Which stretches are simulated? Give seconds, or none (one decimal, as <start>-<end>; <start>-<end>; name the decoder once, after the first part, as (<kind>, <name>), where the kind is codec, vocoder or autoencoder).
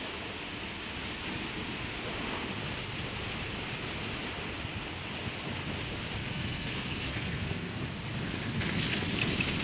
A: 6.2-7.8 (codec, SNAC)